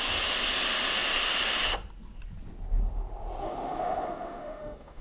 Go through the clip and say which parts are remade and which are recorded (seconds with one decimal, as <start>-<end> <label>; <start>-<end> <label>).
0.0-3.4 recorded; 3.4-5.0 remade